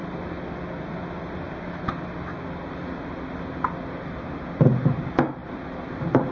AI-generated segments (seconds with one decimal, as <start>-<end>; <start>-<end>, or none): none